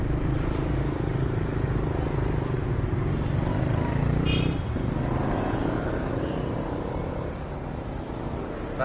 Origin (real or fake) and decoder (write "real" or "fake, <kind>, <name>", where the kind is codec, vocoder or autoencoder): real